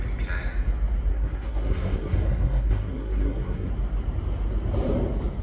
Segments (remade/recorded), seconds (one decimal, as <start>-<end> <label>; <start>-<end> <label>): 0.0-1.1 recorded; 1.1-3.7 remade; 3.7-5.4 recorded